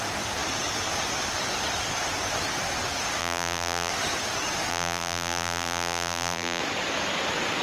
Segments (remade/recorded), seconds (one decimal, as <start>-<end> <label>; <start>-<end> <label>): 0.0-3.2 recorded; 3.2-3.9 remade; 3.9-4.7 recorded; 4.7-6.6 remade; 6.6-7.6 recorded